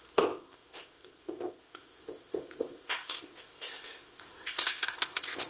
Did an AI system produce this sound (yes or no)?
yes